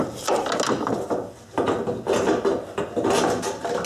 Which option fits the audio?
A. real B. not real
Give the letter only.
A